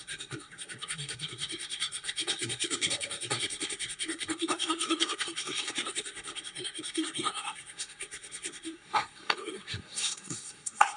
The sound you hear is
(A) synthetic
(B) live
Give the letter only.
A